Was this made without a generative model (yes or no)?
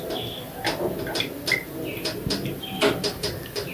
yes